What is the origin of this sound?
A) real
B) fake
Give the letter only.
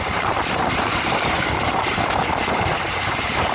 B